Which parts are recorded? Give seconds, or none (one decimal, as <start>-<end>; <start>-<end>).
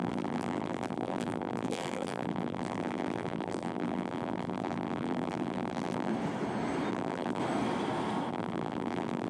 6.1-6.9; 7.4-8.3